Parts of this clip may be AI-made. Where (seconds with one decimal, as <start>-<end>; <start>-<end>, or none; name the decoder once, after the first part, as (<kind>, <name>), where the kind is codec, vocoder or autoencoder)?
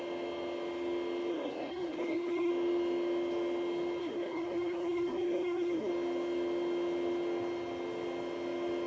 1.3-2.5 (codec, SNAC); 4.0-5.9